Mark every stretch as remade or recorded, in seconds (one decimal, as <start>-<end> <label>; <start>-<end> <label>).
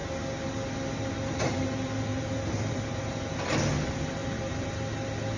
0.0-2.1 recorded; 2.1-3.0 remade; 3.0-4.2 recorded; 4.2-4.7 remade; 4.7-5.4 recorded